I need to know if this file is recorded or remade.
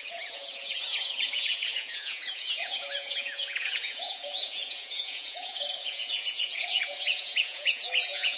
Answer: remade